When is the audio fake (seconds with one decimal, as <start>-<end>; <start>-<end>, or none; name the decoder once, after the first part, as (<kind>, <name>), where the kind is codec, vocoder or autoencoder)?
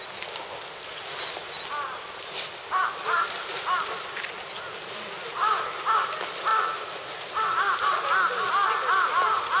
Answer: none